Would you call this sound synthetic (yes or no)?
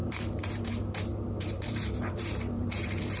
yes